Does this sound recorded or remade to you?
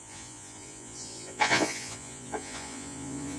remade